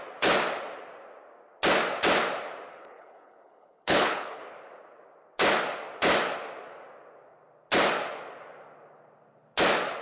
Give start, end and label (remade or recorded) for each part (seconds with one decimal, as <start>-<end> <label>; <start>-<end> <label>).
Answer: 0.0-2.7 recorded; 2.7-4.4 remade; 4.4-10.0 recorded